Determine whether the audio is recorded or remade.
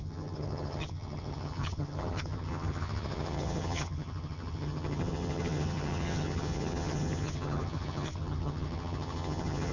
remade